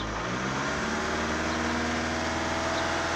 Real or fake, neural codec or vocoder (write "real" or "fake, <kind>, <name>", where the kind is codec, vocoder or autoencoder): real